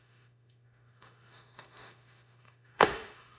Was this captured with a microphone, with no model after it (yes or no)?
no